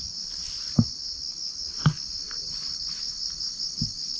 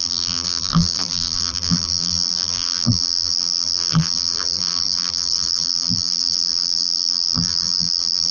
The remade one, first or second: second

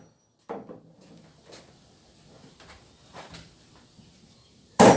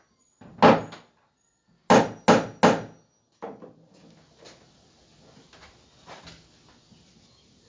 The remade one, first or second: first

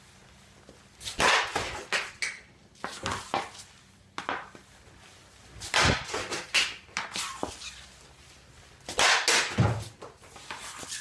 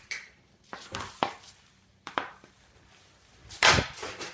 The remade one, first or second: second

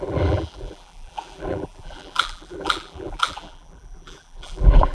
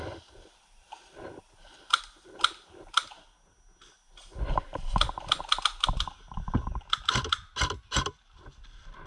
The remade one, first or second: first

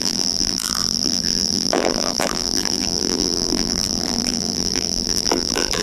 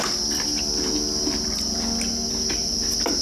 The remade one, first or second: first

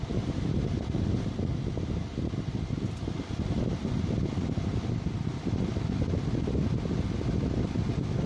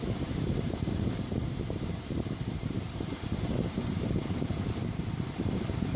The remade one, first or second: second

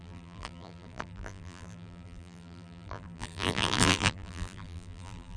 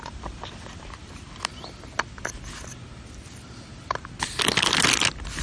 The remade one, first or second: first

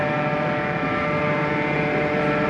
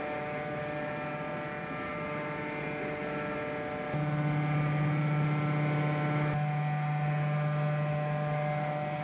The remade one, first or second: first